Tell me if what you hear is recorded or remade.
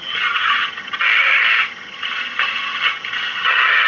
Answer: remade